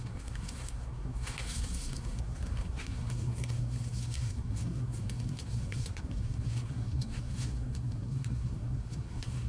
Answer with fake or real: fake